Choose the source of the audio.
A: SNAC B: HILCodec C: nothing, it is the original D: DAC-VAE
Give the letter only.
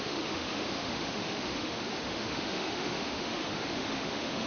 D